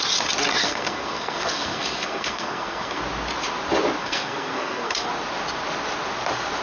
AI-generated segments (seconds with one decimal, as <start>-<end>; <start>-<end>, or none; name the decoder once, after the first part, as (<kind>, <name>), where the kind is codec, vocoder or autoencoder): 0.6-3.0 (codec, SNAC); 4.0-5.1